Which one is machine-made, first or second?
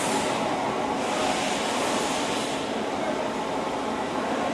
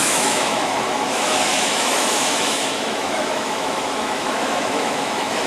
second